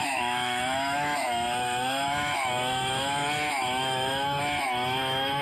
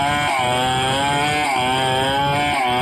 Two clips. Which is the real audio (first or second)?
second